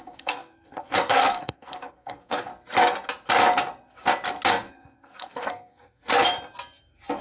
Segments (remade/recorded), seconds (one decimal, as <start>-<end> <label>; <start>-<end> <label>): 0.0-2.5 remade; 2.5-4.5 recorded; 4.5-6.0 remade; 6.0-7.2 recorded